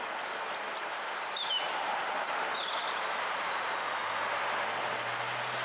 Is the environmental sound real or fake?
real